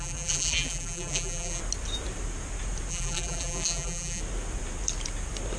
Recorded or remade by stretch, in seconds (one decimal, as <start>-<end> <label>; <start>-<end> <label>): 0.0-1.6 remade; 1.6-2.9 recorded; 2.9-4.2 remade; 4.2-5.6 recorded